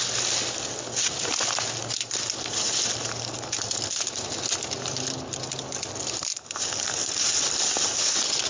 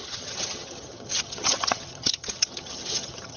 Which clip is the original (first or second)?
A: first